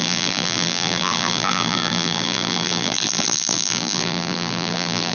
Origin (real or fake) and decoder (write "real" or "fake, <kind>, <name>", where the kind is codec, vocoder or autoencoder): fake, vocoder, BigVGAN v2